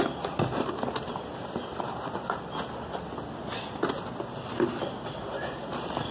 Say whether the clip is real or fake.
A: real